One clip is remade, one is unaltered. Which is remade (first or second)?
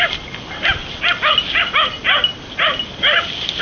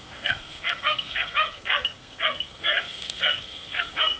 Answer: second